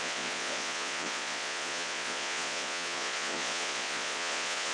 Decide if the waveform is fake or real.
fake